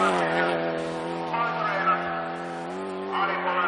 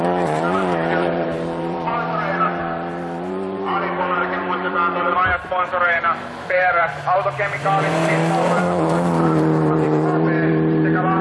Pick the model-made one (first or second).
second